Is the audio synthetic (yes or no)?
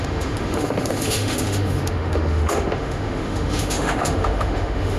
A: yes